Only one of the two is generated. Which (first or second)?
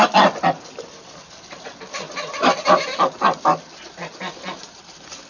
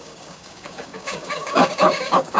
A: second